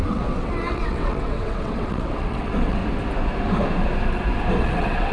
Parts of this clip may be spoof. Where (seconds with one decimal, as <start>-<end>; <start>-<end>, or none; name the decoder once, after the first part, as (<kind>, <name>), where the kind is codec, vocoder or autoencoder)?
0.0-2.8 (vocoder, WaveNeXt); 4.6-5.1